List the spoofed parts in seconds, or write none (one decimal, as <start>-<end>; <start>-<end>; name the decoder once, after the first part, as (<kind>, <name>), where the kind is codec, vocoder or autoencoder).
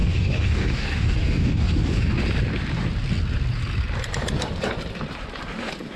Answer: 0.0-2.2 (codec, DAC)